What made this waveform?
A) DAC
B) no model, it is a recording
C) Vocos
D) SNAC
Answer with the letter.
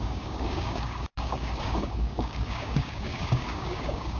A